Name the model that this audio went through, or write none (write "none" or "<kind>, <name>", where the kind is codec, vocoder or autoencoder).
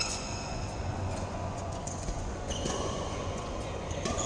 vocoder, Vocos